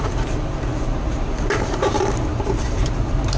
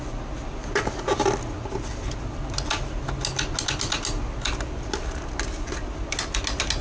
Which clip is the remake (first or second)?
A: first